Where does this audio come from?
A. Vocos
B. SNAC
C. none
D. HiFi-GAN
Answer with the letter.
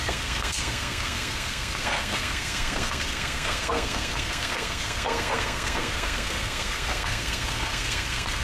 B